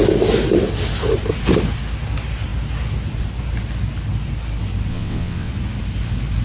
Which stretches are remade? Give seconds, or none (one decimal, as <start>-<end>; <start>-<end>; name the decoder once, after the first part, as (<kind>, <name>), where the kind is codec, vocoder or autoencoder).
4.9-5.5 (vocoder, WaveNeXt)